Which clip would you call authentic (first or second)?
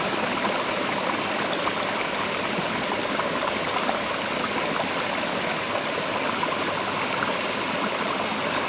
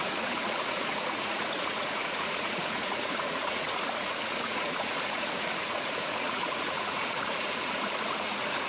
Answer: first